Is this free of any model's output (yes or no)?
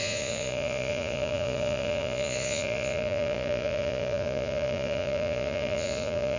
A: no